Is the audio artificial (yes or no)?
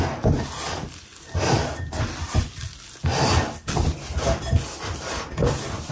no